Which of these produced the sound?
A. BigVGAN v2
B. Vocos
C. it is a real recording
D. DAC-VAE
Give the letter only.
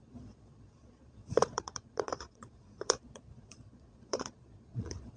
B